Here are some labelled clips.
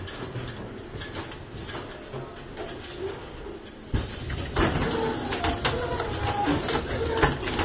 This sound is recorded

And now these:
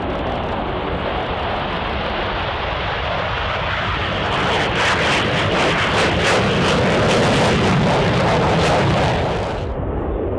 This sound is recorded